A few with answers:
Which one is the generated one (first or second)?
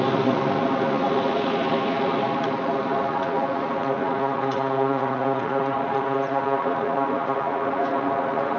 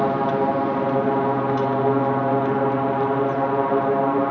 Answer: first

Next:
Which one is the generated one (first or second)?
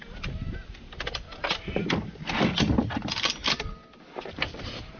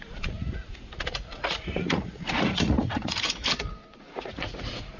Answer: second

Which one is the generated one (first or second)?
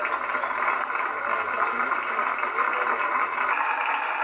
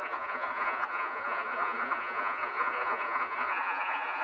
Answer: second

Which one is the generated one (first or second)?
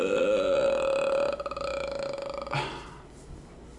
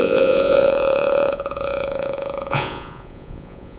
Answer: second